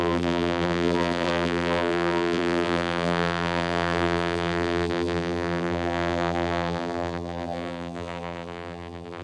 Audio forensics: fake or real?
fake